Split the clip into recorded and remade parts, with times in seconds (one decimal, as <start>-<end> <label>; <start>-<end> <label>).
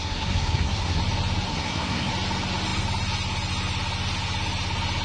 0.0-1.0 remade; 1.0-1.5 recorded; 1.5-2.1 remade; 2.1-5.0 recorded